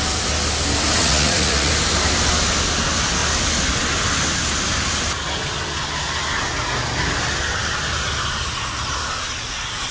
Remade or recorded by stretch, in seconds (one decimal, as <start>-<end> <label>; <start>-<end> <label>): 0.0-1.0 recorded; 1.0-1.7 remade; 1.7-9.9 recorded